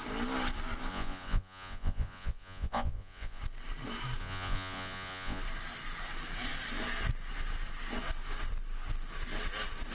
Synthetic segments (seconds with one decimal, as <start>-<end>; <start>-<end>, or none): 0.9-3.4; 4.2-5.4